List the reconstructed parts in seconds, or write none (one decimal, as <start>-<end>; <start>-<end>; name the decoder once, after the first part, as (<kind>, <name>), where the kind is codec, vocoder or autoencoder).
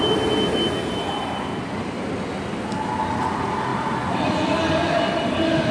none